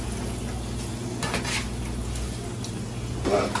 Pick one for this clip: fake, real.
real